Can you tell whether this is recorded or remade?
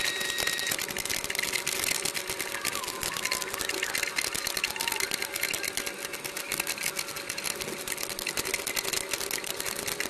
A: recorded